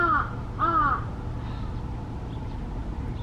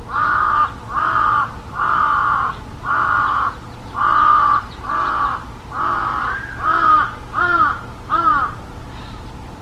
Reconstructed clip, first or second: second